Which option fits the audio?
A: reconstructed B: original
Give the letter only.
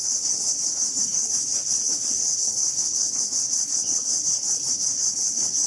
A